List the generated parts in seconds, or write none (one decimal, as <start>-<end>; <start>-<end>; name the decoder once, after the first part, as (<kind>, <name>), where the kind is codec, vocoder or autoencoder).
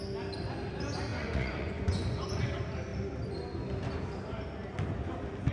1.1-2.4 (vocoder, Vocos)